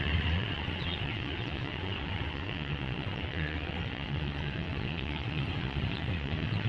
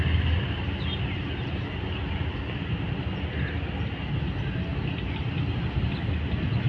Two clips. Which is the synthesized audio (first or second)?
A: first